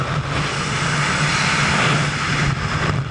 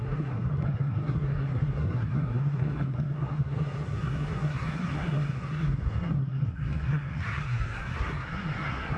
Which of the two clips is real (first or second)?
first